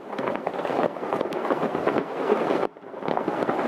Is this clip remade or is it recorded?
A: remade